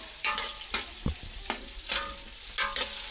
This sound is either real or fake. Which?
real